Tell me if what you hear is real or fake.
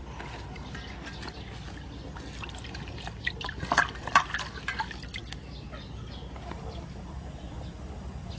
real